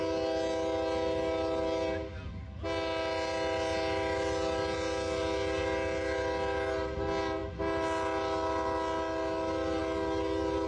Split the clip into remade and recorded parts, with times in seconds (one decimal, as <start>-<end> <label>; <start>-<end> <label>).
0.0-10.7 recorded